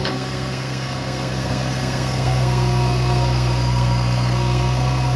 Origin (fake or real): fake